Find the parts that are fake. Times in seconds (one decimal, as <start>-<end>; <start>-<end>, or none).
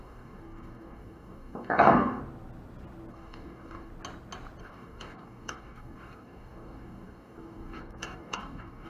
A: 0.0-2.2; 3.1-3.9; 4.6-8.9